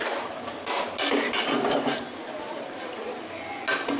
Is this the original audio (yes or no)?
yes